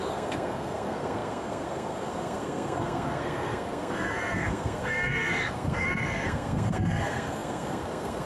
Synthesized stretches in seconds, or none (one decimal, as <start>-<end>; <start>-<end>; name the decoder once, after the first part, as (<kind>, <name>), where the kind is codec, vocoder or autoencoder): 0.0-8.3 (codec, SNAC)

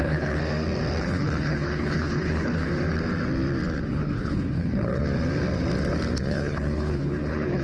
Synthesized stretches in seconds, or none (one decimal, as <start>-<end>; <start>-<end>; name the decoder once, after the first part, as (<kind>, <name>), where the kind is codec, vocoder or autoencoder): 0.0-0.4 (codec, HILCodec); 1.0-2.7; 3.9-5.0; 6.3-7.6